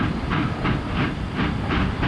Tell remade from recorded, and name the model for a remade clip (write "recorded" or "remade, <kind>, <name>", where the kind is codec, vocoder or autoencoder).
remade, vocoder, BigVGAN v2